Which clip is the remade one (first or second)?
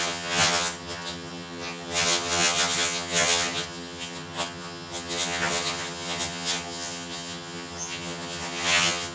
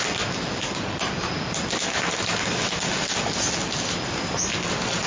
first